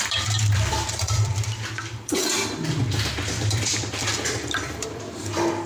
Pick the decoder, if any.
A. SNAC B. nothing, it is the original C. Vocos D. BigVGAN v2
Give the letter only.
D